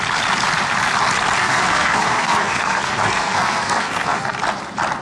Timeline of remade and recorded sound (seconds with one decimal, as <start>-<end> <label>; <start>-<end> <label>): 0.0-1.4 recorded; 1.4-4.4 remade; 4.4-5.0 recorded